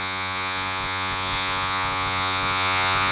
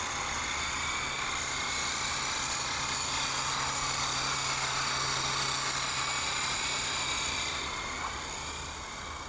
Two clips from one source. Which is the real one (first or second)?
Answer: second